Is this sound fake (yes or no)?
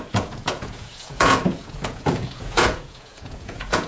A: yes